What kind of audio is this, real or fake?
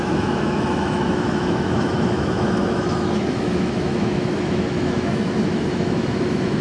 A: fake